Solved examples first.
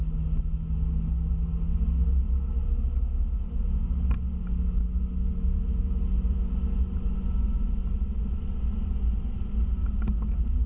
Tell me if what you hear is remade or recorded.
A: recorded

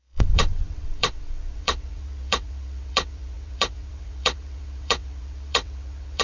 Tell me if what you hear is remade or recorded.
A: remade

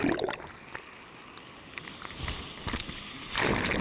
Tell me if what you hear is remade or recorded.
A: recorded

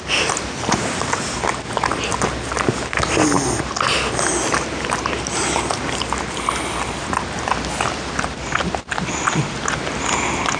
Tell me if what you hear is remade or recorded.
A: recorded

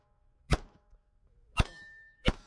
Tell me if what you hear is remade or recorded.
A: remade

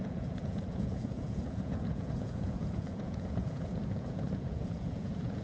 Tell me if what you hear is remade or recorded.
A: remade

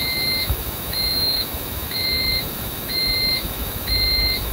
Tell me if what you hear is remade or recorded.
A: remade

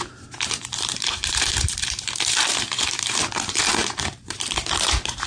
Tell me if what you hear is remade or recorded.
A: remade